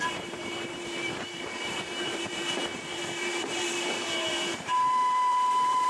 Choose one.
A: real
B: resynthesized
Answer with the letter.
B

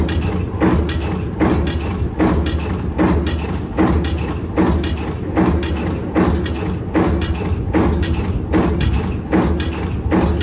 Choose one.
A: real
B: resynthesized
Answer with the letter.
A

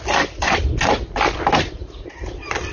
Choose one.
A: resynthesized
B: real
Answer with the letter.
B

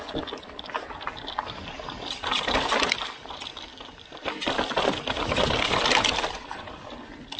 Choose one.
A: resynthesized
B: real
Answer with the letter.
B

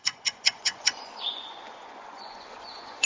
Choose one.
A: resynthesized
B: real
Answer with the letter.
A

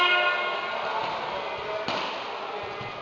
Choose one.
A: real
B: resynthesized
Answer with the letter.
A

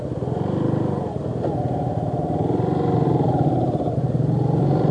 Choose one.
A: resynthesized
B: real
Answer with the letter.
B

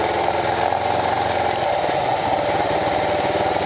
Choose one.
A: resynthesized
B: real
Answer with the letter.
B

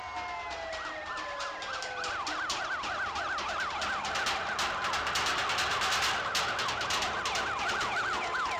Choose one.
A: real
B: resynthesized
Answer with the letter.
A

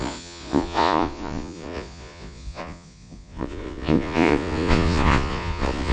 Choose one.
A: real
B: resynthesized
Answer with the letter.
B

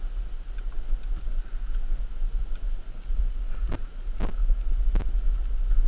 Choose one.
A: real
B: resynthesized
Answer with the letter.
A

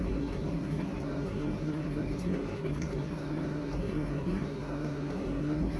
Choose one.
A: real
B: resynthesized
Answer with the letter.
B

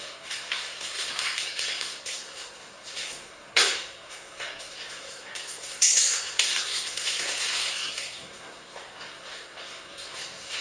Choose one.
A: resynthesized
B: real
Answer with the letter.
A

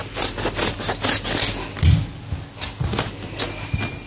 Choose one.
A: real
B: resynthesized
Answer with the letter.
A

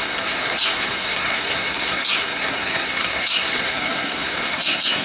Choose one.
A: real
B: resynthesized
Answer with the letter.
B